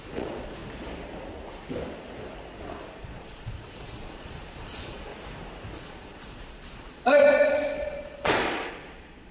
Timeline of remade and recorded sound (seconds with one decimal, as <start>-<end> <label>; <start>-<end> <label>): 0.0-0.6 remade; 0.6-3.0 recorded; 3.0-5.1 remade; 5.1-5.7 recorded; 5.7-9.3 remade